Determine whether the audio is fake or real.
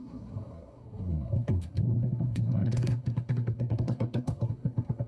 fake